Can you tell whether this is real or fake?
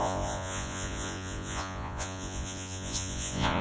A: fake